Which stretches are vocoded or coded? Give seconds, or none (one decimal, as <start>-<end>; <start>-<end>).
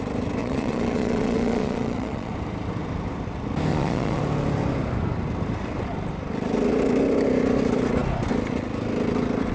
0.4-2.3; 3.7-4.2